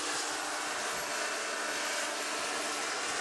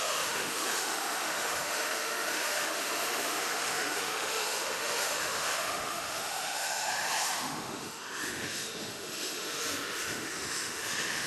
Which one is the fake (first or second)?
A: second